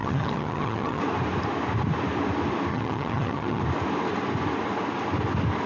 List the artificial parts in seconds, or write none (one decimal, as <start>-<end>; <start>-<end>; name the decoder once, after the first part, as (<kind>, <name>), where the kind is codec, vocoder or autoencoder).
0.0-1.0 (vocoder, HiFi-GAN); 2.7-3.6